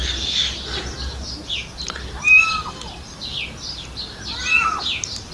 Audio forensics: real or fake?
real